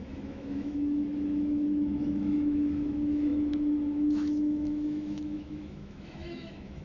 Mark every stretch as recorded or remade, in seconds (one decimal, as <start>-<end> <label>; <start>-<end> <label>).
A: 0.0-6.8 remade